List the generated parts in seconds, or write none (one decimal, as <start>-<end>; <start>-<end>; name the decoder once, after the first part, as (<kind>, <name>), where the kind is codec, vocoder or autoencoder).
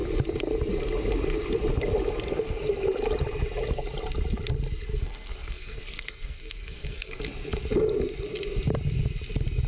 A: 4.9-7.2 (codec, SNAC)